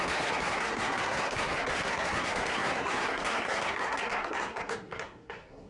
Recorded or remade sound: remade